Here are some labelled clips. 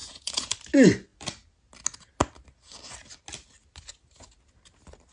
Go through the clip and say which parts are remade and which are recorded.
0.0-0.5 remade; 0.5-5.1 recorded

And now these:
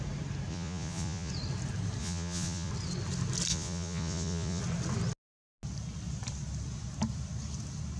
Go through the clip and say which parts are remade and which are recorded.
0.0-0.5 recorded; 0.5-1.3 remade; 1.3-2.0 recorded; 2.0-2.7 remade; 2.7-3.5 recorded; 3.5-4.6 remade; 4.6-8.0 recorded

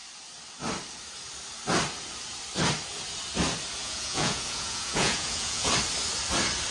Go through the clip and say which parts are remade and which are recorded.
0.0-3.8 recorded; 3.8-5.7 remade; 5.7-6.7 recorded

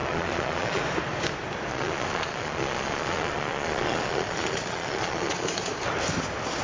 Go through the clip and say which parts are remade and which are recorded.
0.0-0.8 remade; 0.8-1.7 recorded; 1.7-5.7 remade; 5.7-6.6 recorded

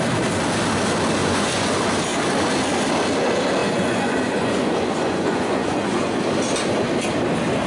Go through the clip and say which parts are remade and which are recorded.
0.0-1.2 recorded; 1.2-1.7 remade; 1.7-3.6 recorded; 3.6-6.2 remade; 6.2-7.7 recorded